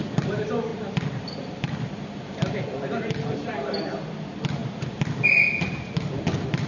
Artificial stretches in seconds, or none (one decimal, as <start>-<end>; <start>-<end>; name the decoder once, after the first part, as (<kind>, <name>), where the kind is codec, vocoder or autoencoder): none